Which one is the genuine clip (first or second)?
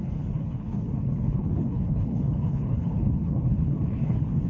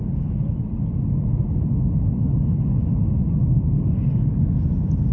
second